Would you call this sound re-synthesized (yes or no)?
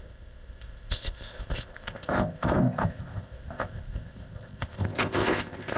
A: yes